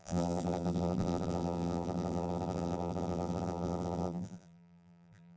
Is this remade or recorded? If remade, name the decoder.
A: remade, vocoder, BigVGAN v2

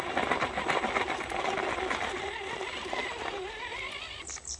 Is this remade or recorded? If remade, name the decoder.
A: recorded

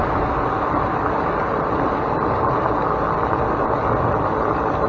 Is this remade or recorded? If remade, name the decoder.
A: recorded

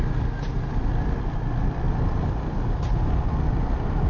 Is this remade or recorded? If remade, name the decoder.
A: recorded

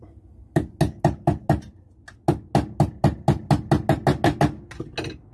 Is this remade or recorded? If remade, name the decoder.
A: recorded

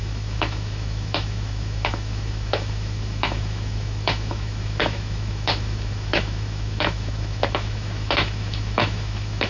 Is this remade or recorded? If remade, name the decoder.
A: remade, autoencoder, DAC-VAE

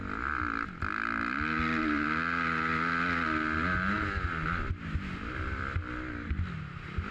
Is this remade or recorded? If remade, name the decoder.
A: recorded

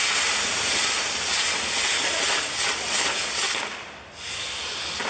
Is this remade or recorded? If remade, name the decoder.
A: remade, vocoder, BigVGAN v2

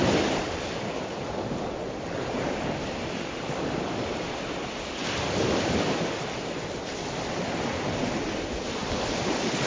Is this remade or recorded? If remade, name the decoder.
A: recorded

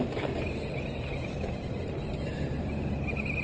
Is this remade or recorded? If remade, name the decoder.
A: recorded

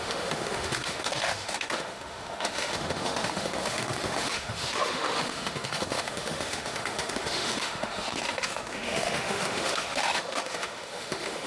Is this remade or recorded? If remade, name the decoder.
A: remade, autoencoder, DAC-VAE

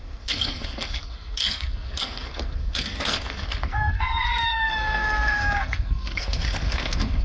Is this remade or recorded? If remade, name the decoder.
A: remade, codec, SNAC